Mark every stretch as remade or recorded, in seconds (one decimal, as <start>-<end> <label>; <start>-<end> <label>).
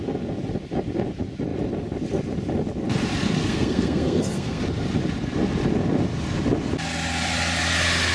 0.0-3.4 recorded; 3.4-4.6 remade; 4.6-8.1 recorded